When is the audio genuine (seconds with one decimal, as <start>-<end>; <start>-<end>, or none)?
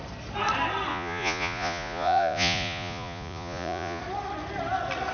0.0-0.9; 4.0-5.1